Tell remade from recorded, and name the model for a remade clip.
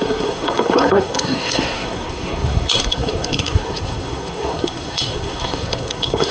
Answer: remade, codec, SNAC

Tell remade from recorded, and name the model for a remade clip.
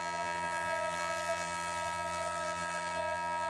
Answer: remade, vocoder, BigVGAN v2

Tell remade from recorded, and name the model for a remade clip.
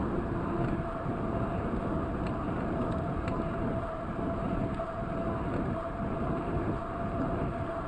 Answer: remade, vocoder, BigVGAN v2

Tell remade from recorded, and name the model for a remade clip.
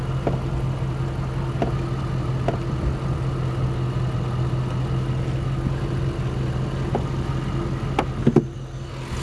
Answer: recorded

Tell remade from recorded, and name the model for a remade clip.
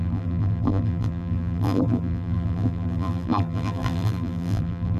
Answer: remade, vocoder, BigVGAN v2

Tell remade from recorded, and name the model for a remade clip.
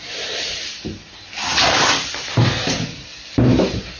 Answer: recorded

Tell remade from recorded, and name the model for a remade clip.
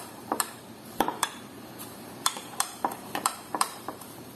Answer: remade, vocoder, BigVGAN v2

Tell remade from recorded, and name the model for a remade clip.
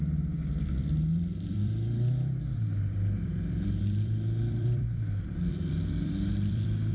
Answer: remade, vocoder, BigVGAN v2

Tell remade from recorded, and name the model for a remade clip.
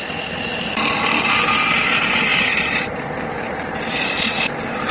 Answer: recorded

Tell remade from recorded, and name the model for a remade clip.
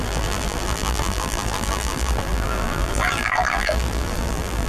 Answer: remade, vocoder, BigVGAN v2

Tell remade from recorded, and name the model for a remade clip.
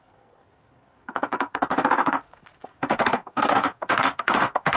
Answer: remade, codec, SNAC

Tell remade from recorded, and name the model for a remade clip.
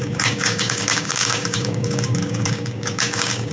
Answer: remade, codec, DAC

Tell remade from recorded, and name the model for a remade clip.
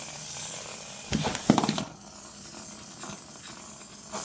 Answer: recorded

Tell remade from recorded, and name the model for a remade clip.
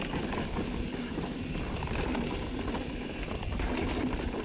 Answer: recorded